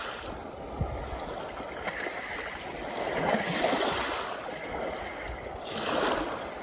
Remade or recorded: recorded